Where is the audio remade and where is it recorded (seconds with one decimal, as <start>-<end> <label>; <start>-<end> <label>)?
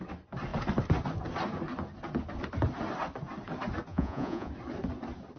0.0-3.9 recorded; 3.9-4.5 remade; 4.5-5.4 recorded